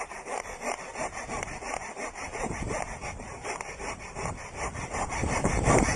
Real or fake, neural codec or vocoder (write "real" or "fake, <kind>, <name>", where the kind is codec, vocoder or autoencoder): fake, vocoder, BigVGAN v2